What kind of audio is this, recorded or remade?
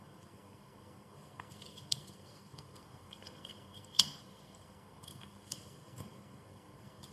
remade